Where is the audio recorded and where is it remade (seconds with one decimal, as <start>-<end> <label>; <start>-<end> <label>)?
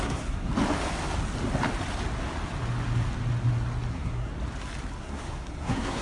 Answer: 0.0-0.5 remade; 0.5-3.9 recorded; 3.9-4.3 remade; 4.3-5.0 recorded; 5.0-6.0 remade